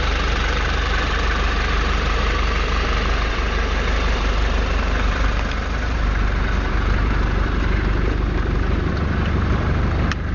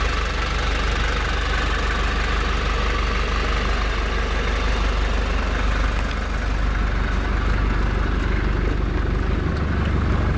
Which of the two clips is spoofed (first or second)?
first